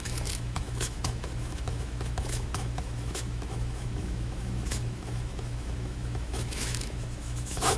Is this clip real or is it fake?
fake